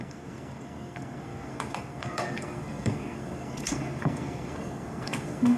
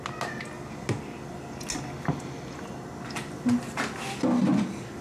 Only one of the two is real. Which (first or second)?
second